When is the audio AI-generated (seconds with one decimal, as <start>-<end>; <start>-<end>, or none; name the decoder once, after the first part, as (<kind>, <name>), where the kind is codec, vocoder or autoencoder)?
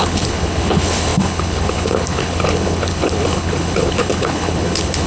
0.0-5.1 (codec, HILCodec)